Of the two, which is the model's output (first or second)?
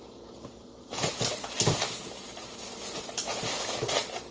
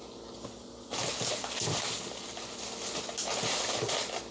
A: first